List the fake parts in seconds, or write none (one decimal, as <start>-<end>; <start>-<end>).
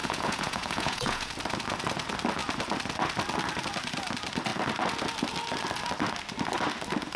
0.0-1.3